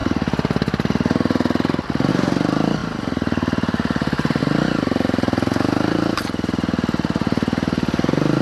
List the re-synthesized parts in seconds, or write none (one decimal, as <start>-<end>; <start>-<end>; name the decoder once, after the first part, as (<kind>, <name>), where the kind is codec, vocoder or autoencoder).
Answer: 2.8-4.4 (vocoder, BigVGAN v2)